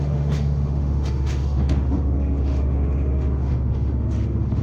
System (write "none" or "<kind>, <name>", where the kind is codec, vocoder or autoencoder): autoencoder, DAC-VAE